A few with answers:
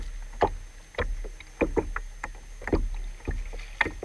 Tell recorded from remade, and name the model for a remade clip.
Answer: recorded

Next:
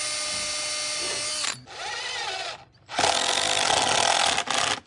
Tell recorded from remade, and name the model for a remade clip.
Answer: recorded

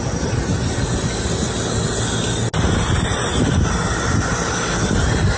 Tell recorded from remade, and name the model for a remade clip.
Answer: recorded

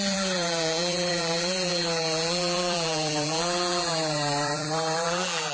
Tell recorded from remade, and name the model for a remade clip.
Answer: remade, vocoder, BigVGAN v2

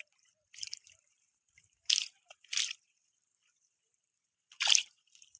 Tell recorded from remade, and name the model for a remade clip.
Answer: remade, vocoder, BigVGAN v2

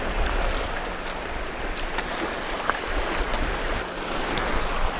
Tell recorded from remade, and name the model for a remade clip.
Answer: recorded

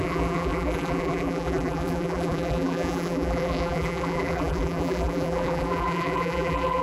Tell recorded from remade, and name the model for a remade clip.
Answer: remade, vocoder, BigVGAN v2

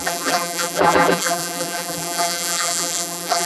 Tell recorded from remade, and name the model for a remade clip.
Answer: remade, vocoder, BigVGAN v2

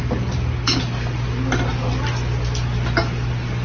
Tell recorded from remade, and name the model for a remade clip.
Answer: recorded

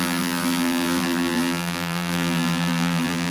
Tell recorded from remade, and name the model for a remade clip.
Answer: remade, vocoder, BigVGAN v2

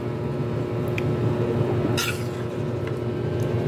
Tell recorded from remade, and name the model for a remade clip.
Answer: recorded